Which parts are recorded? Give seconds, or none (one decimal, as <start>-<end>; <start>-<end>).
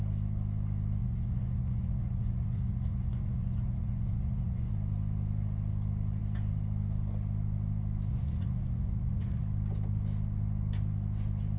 0.0-1.0; 4.7-8.1; 9.4-11.6